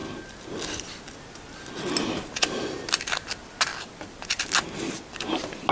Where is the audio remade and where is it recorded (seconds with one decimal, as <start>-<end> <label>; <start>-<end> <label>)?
0.0-5.7 recorded